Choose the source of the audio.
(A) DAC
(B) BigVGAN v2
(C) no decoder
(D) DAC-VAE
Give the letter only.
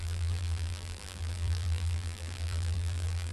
B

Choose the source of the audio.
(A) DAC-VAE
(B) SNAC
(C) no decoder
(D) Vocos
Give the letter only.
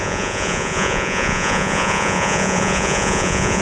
D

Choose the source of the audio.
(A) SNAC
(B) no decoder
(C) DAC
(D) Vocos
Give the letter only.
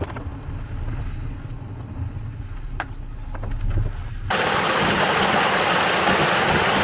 B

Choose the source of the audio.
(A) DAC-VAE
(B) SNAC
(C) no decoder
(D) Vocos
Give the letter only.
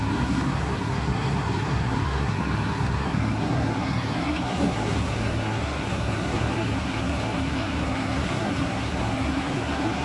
B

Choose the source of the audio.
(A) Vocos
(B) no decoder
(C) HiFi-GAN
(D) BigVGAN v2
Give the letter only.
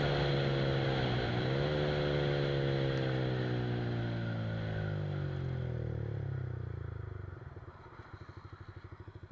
B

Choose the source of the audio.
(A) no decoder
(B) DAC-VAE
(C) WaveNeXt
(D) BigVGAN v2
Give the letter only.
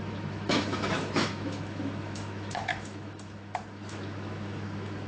B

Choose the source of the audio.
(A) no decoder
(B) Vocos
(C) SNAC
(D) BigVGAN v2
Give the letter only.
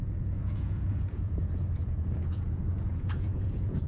B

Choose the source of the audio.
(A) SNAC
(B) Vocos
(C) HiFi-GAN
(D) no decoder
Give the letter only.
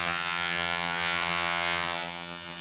C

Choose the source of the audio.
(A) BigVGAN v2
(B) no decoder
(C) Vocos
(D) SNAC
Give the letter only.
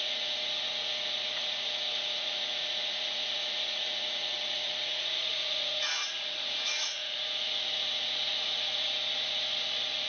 C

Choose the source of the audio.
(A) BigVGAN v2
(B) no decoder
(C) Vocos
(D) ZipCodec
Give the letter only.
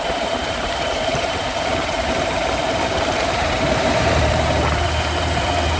A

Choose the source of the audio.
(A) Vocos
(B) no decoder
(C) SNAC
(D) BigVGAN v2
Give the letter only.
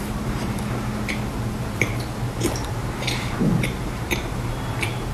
D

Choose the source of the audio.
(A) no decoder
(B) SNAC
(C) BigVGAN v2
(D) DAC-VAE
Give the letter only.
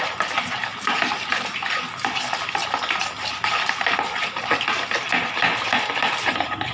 A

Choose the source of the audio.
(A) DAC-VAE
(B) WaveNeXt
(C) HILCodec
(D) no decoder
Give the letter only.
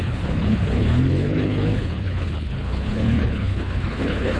C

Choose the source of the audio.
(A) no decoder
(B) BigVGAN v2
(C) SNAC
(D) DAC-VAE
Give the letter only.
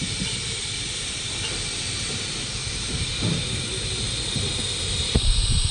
A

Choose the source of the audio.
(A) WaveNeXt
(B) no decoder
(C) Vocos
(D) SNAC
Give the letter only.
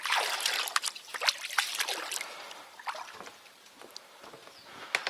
B